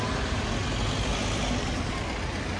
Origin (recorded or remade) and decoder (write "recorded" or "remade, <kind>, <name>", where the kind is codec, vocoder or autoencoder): recorded